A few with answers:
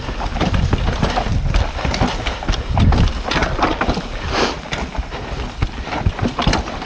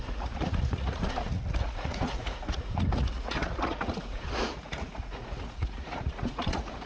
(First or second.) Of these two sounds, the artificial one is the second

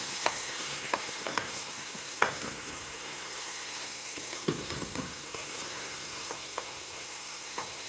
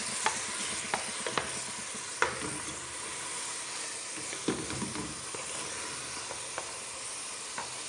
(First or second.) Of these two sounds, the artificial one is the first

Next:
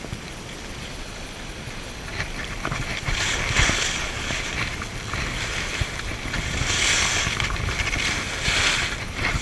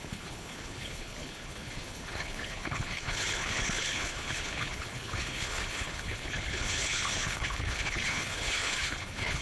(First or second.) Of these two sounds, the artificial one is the second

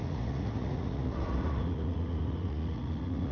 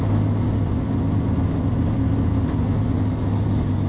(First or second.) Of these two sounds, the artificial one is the first